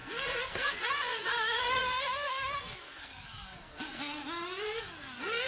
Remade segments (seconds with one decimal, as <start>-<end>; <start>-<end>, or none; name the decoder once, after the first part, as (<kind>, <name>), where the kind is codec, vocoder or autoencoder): 0.0-4.2 (codec, SNAC); 4.8-5.5